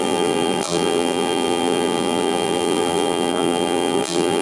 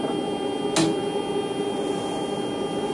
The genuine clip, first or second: second